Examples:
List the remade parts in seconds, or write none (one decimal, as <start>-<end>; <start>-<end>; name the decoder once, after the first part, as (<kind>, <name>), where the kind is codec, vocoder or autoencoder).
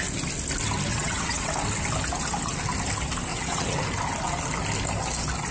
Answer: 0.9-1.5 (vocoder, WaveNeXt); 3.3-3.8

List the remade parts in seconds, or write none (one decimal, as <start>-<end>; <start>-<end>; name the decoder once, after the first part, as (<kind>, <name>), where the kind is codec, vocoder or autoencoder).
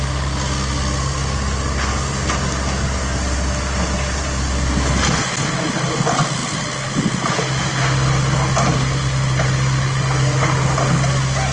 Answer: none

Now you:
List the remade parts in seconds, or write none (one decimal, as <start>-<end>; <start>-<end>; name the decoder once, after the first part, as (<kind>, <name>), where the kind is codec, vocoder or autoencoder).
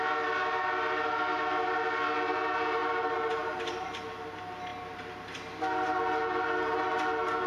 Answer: 2.8-3.9 (vocoder, BigVGAN v2)